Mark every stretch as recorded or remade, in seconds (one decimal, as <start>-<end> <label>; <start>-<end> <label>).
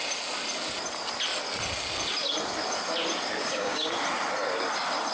0.0-3.4 recorded; 3.4-3.9 remade; 3.9-5.1 recorded